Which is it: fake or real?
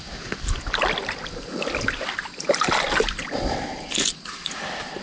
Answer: real